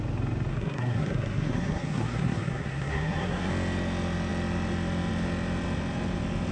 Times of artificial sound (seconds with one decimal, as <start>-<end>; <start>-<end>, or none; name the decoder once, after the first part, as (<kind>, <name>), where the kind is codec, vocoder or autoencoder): 0.5-3.5 (codec, SNAC)